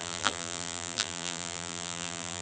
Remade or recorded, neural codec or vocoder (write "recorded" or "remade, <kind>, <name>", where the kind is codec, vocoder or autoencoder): remade, vocoder, BigVGAN v2